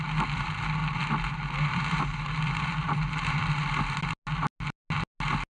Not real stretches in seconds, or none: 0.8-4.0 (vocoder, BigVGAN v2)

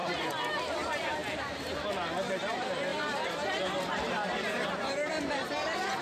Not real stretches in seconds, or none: 0.7-1.2 (vocoder, BigVGAN v2); 2.3-6.0

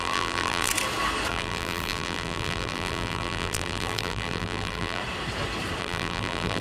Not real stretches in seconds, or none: 0.0-0.7 (vocoder, BigVGAN v2); 1.3-5.0; 5.8-6.6

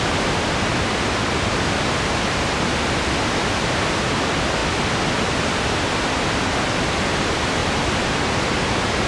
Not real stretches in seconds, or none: 7.6-8.4 (vocoder, BigVGAN v2)

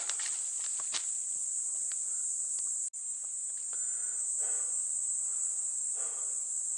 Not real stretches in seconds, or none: none

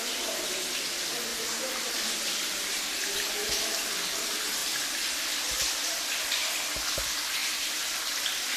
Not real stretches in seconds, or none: 1.3-3.9 (vocoder, BigVGAN v2)

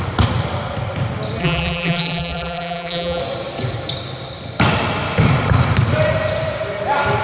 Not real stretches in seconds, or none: 1.4-3.2 (vocoder, BigVGAN v2)

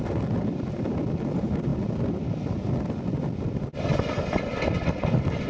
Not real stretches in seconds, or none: none